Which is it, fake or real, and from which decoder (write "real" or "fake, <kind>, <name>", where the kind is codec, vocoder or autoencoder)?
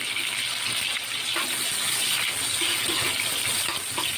real